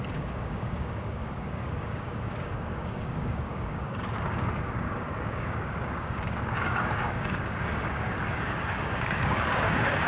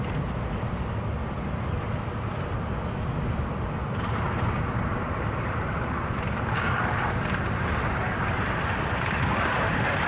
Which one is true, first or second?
second